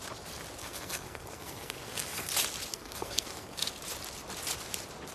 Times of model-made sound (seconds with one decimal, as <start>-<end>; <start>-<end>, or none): 0.6-2.3; 2.7-3.7